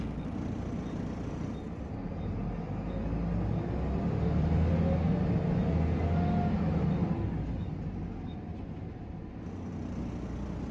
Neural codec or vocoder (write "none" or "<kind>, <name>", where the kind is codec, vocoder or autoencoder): none